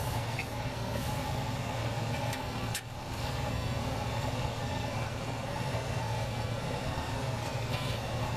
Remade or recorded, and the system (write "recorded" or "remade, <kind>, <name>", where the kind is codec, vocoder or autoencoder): remade, codec, SNAC